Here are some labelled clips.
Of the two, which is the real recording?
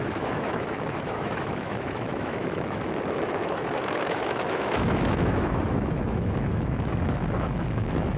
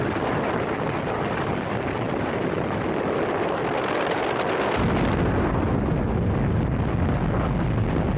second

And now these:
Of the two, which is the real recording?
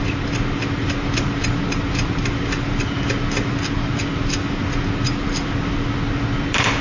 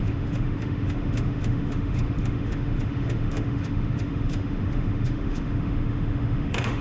first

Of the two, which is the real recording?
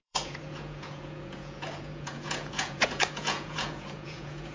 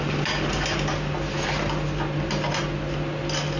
second